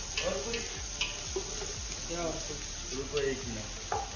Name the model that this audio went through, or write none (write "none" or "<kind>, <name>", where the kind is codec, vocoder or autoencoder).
none